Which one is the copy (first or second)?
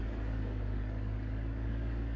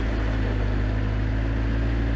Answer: first